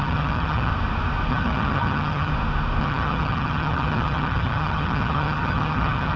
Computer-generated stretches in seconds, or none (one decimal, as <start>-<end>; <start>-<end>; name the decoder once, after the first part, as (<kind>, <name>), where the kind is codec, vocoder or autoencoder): 0.0-0.7 (vocoder, HiFi-GAN); 1.3-2.3; 2.8-6.2